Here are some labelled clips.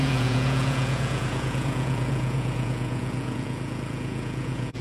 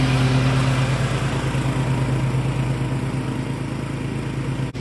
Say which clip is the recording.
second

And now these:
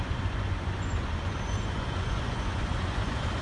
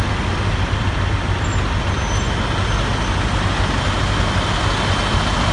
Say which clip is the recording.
second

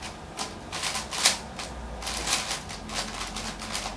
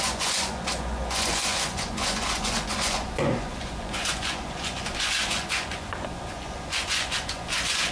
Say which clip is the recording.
first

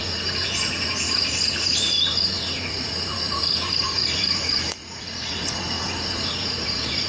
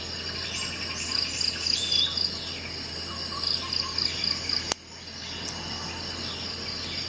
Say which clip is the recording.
second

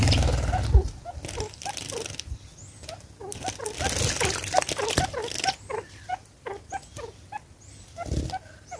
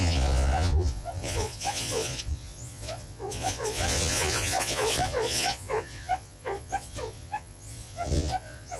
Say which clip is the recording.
first